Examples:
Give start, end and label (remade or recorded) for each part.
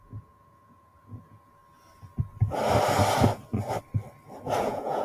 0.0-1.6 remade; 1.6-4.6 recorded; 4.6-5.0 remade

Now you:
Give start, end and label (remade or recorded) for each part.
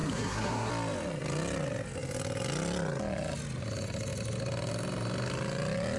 0.0-0.7 remade; 0.7-6.0 recorded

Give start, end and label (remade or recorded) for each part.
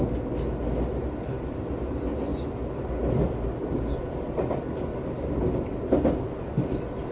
0.0-2.3 recorded; 2.3-2.9 remade; 2.9-4.9 recorded; 4.9-5.9 remade; 5.9-7.1 recorded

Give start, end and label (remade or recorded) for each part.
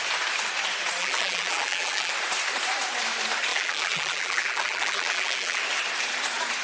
0.0-1.0 recorded; 1.0-2.1 remade; 2.1-3.5 recorded; 3.5-5.6 remade; 5.6-6.6 recorded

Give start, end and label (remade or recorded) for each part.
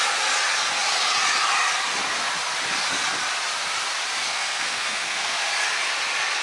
0.0-4.3 recorded; 4.3-5.4 remade; 5.4-6.4 recorded